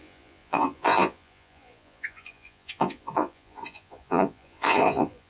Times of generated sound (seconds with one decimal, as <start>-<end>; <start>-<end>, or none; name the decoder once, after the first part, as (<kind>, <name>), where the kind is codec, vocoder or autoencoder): 0.0-5.3 (vocoder, Vocos)